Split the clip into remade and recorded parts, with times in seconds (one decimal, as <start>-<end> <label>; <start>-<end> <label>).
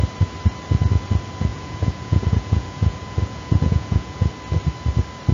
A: 0.0-1.5 recorded; 1.5-4.3 remade; 4.3-5.3 recorded